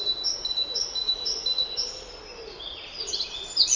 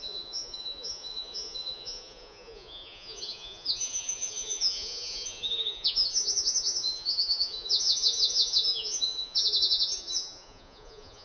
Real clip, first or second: first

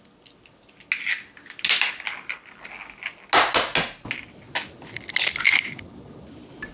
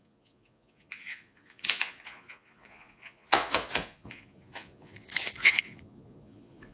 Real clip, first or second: first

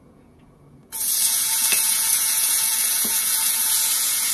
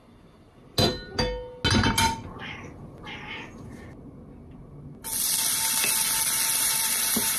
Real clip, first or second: second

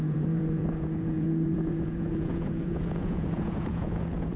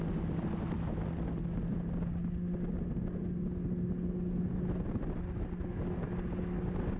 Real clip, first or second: second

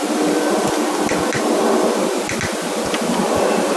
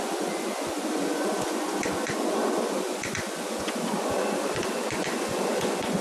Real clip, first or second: first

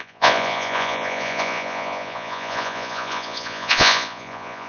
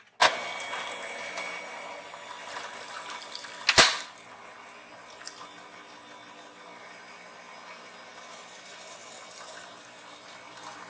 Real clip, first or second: second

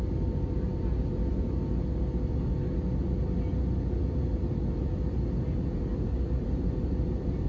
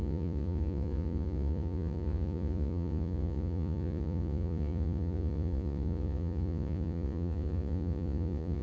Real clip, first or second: first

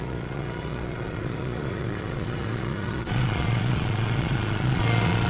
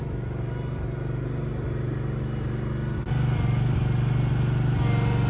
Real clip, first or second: second